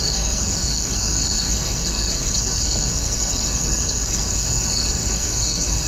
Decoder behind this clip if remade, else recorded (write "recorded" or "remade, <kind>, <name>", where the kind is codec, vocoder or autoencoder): remade, codec, SNAC